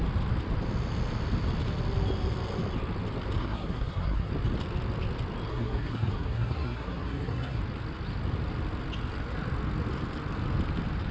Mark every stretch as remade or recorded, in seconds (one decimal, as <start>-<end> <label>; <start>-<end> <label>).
0.0-3.4 recorded; 3.4-4.3 remade; 4.3-5.5 recorded; 5.5-7.6 remade; 7.6-11.1 recorded